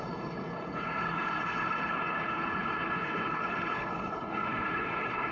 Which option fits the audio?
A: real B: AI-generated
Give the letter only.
B